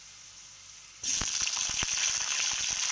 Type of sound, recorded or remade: recorded